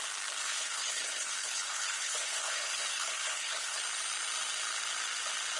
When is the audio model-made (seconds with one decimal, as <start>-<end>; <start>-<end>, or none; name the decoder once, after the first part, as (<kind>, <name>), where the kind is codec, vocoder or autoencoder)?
0.4-3.8 (codec, HILCodec)